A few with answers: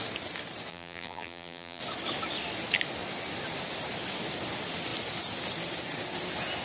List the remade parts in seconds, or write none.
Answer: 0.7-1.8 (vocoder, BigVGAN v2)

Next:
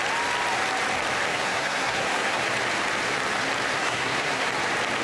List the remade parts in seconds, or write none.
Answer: 1.3-2.4 (codec, SNAC); 3.7-4.5

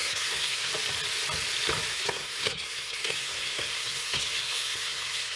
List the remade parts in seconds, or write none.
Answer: 0.0-0.7 (codec, SNAC); 1.9-5.4

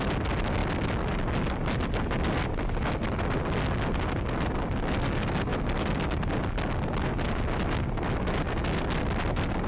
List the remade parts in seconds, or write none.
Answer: none

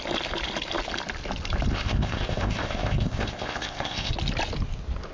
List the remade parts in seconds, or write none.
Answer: 1.7-4.1 (codec, ZipCodec)